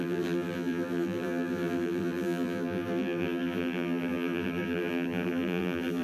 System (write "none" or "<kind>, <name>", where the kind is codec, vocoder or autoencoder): vocoder, BigVGAN v2